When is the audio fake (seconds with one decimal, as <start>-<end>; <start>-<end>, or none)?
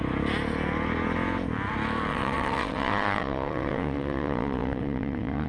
2.1-5.5